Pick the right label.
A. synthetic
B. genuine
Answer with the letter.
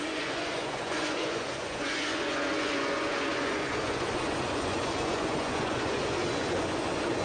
A